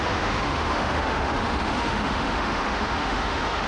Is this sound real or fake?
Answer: fake